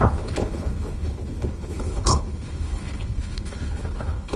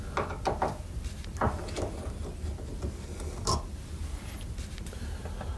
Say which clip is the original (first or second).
second